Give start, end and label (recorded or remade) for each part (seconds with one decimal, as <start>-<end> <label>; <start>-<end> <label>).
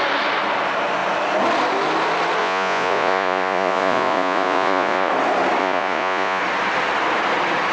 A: 0.0-2.4 recorded; 2.4-5.1 remade; 5.1-5.6 recorded; 5.6-6.4 remade; 6.4-7.7 recorded